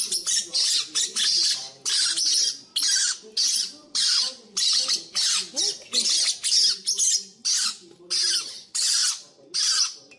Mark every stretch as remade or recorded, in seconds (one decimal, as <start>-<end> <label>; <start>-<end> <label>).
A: 0.0-10.2 recorded